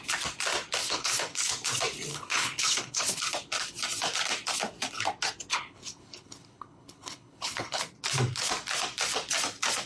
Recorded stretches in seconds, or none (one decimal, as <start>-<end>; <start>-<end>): 0.0-0.8; 1.5-2.1; 3.2-5.5; 7.8-9.9